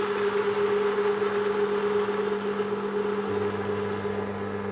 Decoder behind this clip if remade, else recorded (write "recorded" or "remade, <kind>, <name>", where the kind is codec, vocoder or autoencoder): recorded